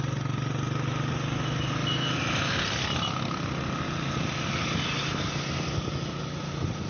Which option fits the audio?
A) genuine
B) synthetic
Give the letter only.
A